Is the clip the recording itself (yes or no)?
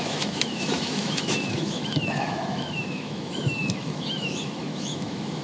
no